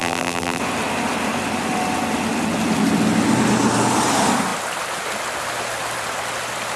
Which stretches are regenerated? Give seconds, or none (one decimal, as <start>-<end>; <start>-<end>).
0.0-0.6